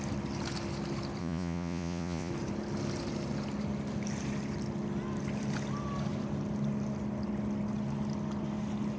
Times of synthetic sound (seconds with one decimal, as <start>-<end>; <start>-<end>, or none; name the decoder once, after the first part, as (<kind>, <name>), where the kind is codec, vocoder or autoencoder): 1.2-2.3 (vocoder, Vocos)